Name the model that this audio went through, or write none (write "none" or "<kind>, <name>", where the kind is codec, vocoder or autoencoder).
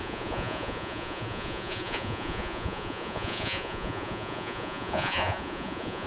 vocoder, Vocos